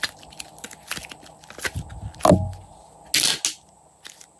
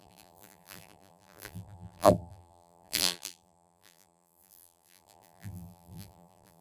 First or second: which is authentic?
first